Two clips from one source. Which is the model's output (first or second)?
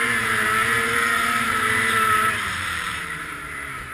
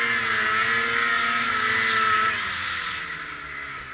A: first